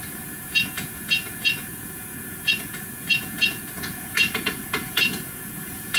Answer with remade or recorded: remade